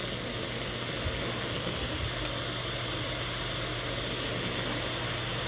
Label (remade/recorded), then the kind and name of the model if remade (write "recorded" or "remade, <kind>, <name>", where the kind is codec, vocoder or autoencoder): recorded